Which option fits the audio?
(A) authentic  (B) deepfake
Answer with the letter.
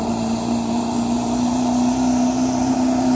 A